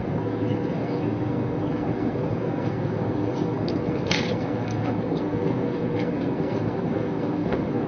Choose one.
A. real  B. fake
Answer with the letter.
B